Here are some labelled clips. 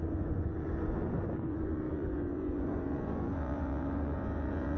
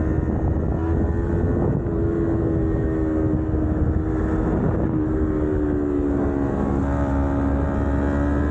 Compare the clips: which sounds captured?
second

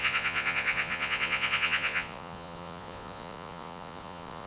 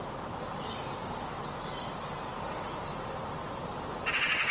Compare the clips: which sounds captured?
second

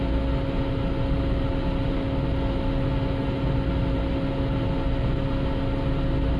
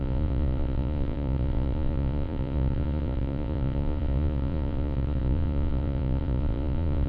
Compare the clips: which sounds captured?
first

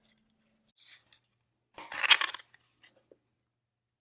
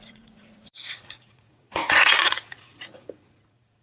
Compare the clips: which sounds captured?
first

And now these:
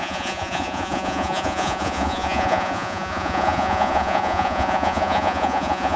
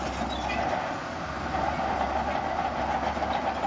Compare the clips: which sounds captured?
second